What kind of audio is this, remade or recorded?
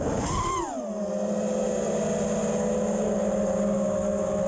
recorded